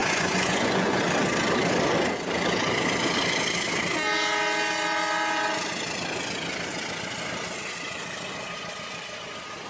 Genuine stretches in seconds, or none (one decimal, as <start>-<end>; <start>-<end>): 1.0-9.7

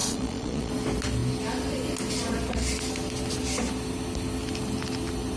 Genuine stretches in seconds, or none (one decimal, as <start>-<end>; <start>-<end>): 0.7-5.4

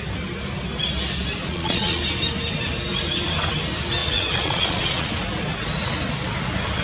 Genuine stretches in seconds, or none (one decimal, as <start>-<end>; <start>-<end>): 0.0-1.4; 2.0-4.0; 5.1-6.8

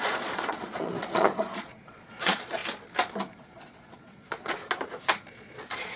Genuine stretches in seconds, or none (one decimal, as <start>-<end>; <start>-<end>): 2.6-3.4; 4.6-5.3